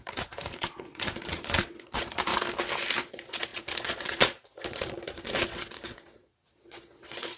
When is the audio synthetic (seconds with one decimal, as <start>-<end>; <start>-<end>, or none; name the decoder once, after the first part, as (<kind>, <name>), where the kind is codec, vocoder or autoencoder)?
0.0-2.3 (vocoder, Vocos); 3.1-7.4